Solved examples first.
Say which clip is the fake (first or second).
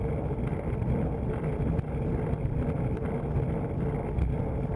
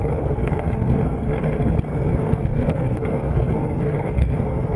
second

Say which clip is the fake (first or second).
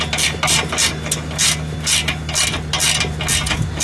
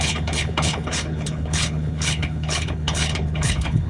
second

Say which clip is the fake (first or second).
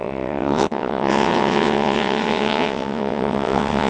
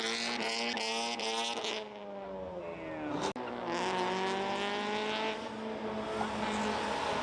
first